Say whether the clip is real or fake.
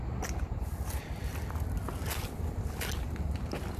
real